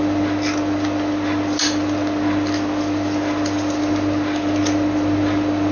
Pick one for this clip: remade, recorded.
recorded